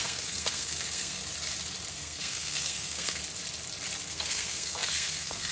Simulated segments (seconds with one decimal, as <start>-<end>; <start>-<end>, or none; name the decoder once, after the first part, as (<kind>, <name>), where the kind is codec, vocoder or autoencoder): 0.0-1.2 (codec, SNAC); 1.9-3.2; 4.1-5.5